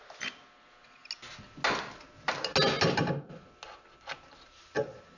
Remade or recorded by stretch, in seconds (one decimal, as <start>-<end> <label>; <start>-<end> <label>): 0.0-5.2 recorded